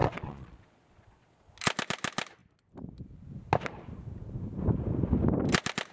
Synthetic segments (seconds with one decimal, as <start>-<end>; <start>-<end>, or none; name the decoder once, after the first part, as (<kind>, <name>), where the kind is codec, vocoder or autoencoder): 0.0-1.5 (vocoder, Vocos)